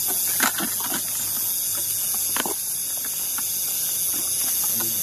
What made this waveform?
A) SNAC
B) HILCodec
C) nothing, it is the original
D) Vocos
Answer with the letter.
C